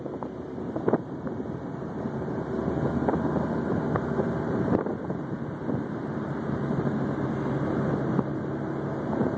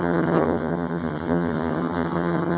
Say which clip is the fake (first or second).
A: second